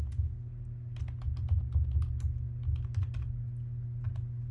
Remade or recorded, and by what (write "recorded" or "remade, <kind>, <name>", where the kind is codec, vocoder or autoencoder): recorded